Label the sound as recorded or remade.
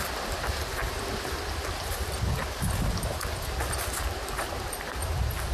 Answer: recorded